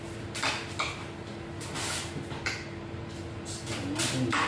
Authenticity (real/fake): real